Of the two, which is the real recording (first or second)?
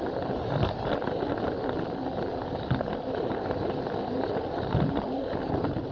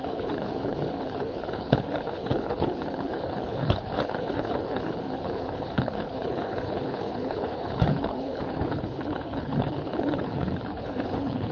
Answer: first